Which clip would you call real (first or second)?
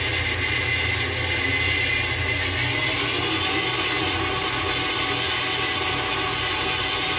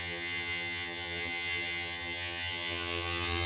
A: first